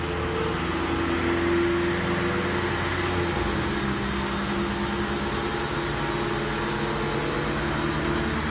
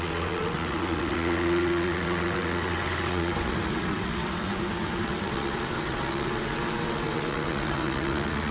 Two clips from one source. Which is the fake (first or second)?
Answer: second